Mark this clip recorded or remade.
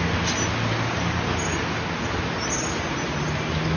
recorded